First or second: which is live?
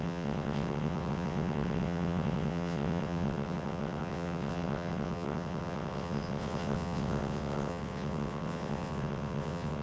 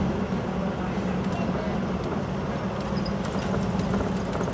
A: second